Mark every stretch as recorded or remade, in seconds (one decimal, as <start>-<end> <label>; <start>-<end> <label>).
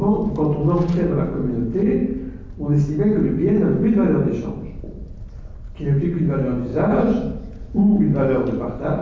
0.0-6.7 recorded; 6.7-8.0 remade; 8.0-9.0 recorded